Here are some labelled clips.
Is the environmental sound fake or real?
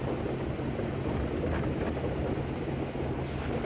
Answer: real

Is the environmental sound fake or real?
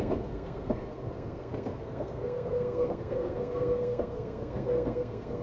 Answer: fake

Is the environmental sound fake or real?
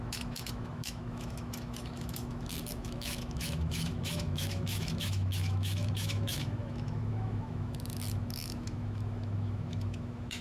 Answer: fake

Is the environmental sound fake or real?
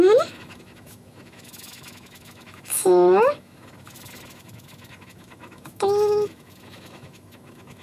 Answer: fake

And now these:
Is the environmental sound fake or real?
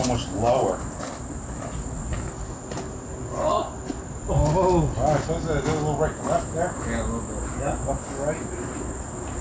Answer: real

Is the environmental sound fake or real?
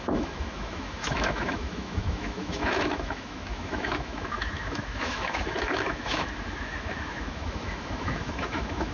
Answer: fake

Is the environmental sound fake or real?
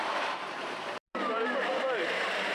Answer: fake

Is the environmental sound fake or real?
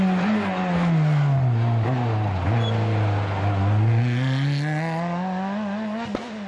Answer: real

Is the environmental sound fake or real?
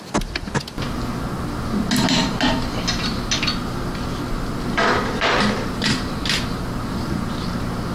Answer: real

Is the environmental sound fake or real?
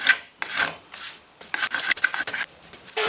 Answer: fake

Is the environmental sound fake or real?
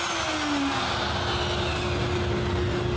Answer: real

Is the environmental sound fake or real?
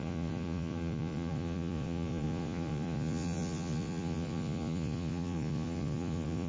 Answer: fake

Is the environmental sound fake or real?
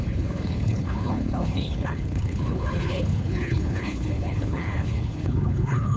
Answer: fake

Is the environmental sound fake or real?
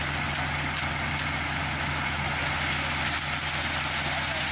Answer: real